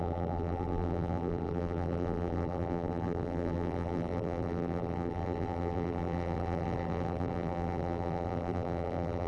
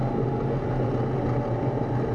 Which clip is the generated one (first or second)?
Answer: first